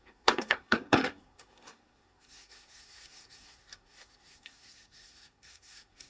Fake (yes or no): yes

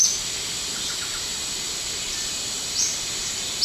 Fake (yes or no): no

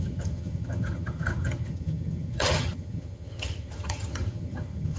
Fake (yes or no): yes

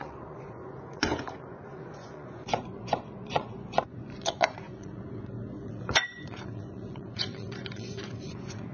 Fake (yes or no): yes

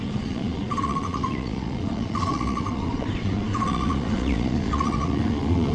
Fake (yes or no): yes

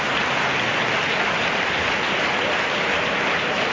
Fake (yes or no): no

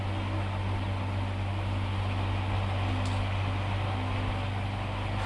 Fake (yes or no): no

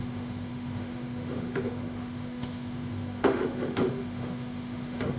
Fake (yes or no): yes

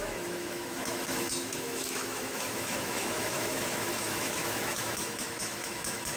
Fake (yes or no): yes